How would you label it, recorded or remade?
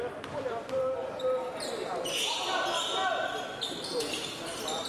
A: remade